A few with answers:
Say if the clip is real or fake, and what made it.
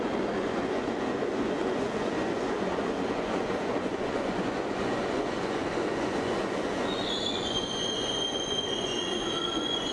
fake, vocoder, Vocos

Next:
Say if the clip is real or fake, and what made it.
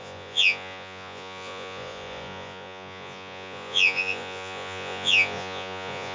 fake, vocoder, Vocos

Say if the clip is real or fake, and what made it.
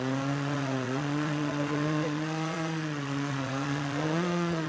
fake, vocoder, Vocos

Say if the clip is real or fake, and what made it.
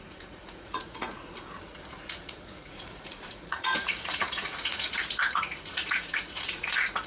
fake, vocoder, Vocos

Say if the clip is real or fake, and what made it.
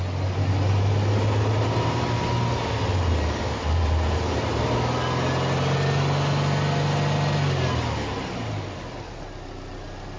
real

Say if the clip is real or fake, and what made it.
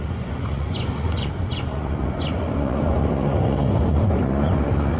fake, vocoder, Vocos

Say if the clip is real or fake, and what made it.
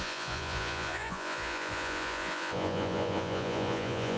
fake, vocoder, Vocos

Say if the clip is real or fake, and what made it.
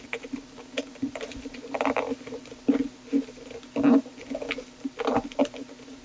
real